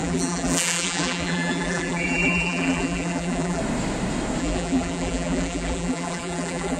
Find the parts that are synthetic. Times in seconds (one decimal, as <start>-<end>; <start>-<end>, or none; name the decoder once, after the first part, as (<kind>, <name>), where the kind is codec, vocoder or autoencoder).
0.0-3.6 (vocoder, BigVGAN v2); 4.4-6.8

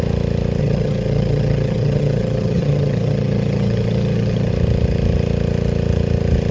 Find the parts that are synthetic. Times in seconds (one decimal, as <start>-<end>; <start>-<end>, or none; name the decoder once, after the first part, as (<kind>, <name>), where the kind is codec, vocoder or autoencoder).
0.6-4.5 (vocoder, HiFi-GAN)

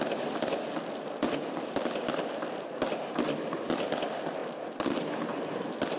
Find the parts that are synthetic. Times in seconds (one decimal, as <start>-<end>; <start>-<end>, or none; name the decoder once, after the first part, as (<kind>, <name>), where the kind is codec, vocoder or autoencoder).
none

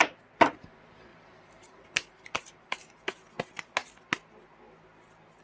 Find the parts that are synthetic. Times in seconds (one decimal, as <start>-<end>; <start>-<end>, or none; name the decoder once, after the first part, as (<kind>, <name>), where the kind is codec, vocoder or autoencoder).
1.1-3.3 (vocoder, BigVGAN v2)

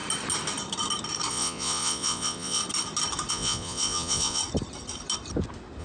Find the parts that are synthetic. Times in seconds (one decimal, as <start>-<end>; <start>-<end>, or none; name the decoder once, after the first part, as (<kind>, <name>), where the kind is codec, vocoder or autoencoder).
1.3-2.6 (vocoder, Vocos); 3.3-4.4

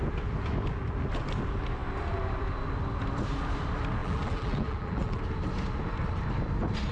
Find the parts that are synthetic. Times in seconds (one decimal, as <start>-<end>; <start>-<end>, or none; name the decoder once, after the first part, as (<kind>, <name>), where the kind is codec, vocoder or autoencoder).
4.0-5.2 (vocoder, BigVGAN v2)